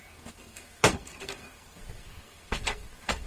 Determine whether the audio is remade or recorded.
remade